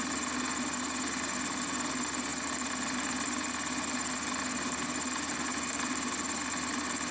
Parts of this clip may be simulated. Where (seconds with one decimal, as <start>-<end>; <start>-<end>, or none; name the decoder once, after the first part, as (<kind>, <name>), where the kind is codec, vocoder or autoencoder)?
none